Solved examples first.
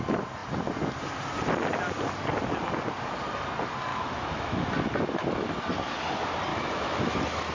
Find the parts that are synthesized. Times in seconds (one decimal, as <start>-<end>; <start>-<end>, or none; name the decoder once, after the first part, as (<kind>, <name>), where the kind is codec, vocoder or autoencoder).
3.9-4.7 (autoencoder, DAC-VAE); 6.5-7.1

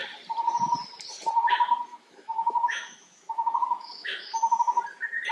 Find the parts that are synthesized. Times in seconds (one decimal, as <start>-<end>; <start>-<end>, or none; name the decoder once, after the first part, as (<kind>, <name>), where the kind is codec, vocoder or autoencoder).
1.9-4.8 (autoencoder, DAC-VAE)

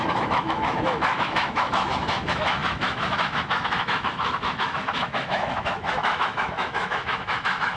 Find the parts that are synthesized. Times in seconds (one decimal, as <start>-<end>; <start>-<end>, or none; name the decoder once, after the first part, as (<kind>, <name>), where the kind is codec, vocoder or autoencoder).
0.0-7.8 (autoencoder, DAC-VAE)

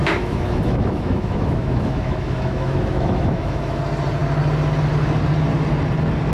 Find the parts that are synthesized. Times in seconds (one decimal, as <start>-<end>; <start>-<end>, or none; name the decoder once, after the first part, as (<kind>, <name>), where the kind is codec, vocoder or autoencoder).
0.0-3.8 (autoencoder, DAC-VAE)

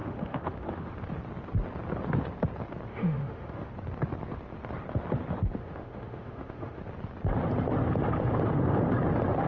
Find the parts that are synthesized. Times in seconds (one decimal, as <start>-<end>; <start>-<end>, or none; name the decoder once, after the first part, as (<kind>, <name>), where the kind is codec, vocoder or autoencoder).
0.0-0.9 (autoencoder, DAC-VAE); 2.9-3.7; 5.6-6.8